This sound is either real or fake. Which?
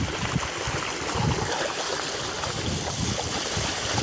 real